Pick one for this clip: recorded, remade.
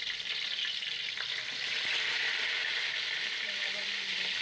recorded